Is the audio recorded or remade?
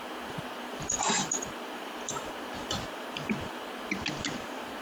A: remade